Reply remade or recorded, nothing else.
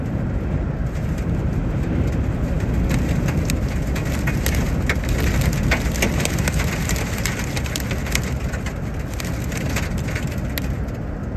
recorded